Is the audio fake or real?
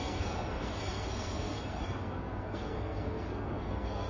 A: fake